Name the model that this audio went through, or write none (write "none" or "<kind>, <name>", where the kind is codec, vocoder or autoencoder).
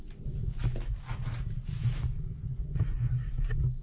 none